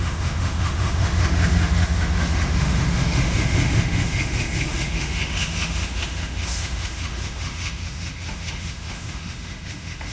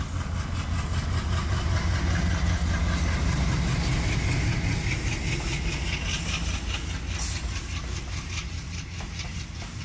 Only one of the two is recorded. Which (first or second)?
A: second